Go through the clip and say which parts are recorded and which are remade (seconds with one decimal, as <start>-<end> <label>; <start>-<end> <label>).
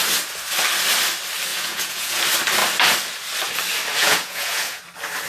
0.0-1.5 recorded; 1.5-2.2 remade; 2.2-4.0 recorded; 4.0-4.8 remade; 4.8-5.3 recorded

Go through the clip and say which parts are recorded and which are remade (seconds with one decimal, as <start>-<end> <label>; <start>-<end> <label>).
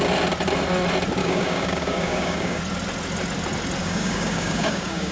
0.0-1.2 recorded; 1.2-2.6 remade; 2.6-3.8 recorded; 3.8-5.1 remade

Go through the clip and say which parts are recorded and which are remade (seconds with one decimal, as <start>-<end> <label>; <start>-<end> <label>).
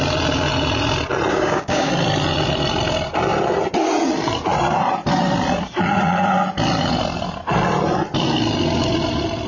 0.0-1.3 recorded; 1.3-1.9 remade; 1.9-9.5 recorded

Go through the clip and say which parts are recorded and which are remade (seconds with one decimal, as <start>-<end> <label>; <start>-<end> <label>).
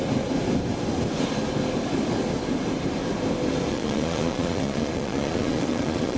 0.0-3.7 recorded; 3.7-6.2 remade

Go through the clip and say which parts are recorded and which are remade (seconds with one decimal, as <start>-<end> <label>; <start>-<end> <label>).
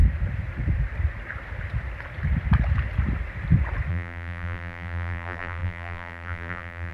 0.0-3.9 recorded; 3.9-6.9 remade